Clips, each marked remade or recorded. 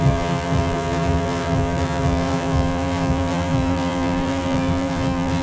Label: remade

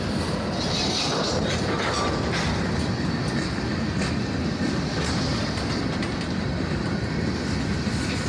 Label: recorded